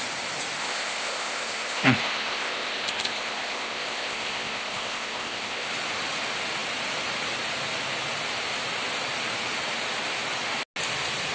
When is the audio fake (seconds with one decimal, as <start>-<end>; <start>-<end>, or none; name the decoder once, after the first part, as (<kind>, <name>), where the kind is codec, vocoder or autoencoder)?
0.6-5.7 (codec, ZipCodec)